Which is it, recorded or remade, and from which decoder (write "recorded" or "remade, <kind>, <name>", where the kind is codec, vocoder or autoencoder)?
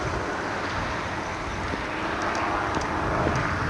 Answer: recorded